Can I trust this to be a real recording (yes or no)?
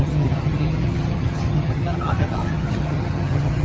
no